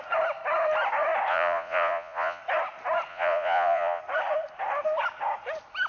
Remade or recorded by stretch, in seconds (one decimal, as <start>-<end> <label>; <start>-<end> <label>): 0.0-1.3 recorded; 1.3-2.4 remade; 2.4-3.1 recorded; 3.1-4.0 remade; 4.0-5.9 recorded